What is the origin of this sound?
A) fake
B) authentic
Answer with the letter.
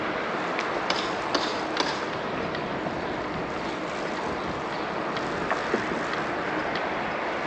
B